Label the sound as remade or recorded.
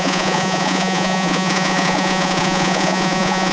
remade